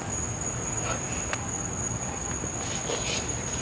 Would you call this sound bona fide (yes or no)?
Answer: yes